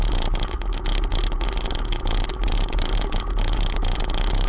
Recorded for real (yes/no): yes